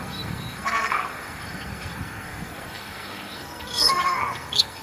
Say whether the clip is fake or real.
fake